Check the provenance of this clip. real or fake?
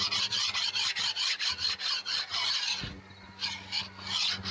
real